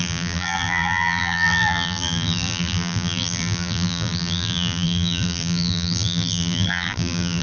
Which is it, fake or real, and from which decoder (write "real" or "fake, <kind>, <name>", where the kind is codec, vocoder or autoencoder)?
fake, vocoder, BigVGAN v2